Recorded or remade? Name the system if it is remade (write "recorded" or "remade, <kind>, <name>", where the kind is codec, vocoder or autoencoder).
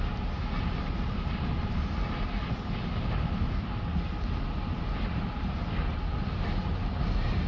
recorded